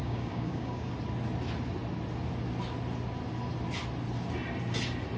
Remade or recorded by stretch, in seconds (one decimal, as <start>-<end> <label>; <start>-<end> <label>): 0.0-0.9 remade; 0.9-5.2 recorded